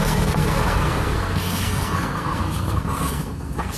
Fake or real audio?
fake